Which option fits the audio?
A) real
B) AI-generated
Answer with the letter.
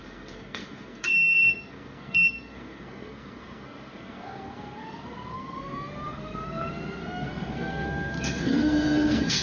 B